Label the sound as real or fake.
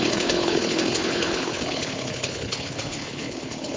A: fake